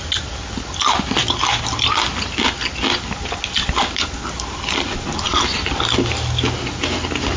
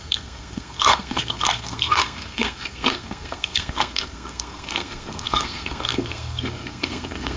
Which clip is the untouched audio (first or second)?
first